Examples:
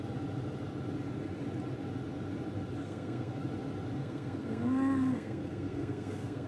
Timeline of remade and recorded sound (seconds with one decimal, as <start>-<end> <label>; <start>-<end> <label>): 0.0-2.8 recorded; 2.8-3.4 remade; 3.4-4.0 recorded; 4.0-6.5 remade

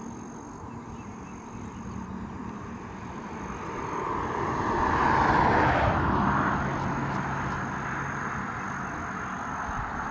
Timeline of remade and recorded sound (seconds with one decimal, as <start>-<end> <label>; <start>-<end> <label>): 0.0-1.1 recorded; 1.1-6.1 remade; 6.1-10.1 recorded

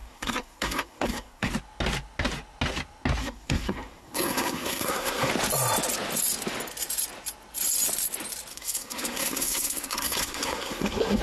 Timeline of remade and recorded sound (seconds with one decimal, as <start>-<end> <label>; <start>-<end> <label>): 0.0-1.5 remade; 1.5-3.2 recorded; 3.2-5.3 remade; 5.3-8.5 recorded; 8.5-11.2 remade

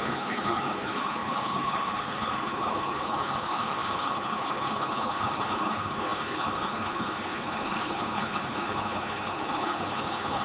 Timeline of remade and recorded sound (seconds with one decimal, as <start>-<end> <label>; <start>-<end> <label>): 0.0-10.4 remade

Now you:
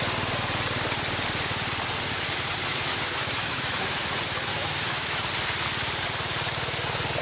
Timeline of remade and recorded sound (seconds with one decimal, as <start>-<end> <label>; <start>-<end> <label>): 0.0-2.7 recorded; 2.7-4.0 remade; 4.0-4.5 recorded; 4.5-5.3 remade; 5.3-7.2 recorded

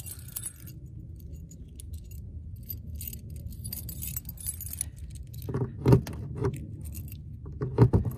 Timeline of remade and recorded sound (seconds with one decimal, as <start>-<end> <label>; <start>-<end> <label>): 0.0-8.2 recorded